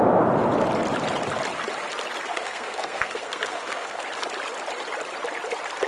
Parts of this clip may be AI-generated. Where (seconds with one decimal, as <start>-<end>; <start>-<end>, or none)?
2.3-4.0